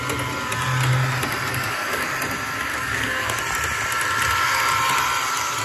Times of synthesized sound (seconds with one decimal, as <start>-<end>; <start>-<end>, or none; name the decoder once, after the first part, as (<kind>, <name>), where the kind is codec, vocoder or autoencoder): 1.5-2.1 (codec, DAC); 2.7-3.4